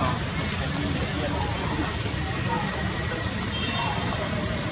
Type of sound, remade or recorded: recorded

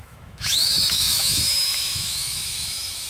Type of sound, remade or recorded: remade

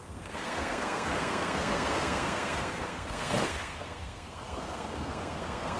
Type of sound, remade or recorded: remade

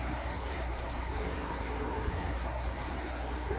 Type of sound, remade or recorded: remade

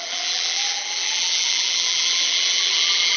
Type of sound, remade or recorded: remade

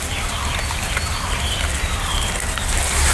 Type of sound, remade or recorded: recorded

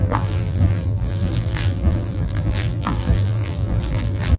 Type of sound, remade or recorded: remade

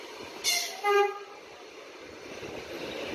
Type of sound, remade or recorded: recorded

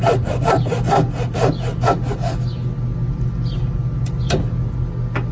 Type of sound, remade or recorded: recorded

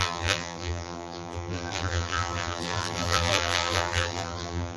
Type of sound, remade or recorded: remade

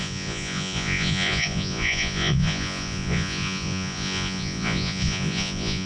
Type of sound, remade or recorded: remade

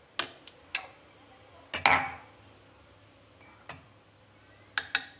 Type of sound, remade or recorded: recorded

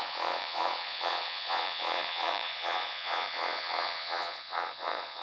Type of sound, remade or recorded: remade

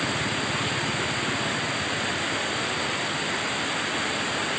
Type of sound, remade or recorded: recorded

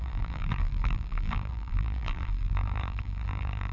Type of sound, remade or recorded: remade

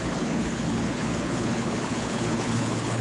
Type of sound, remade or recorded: remade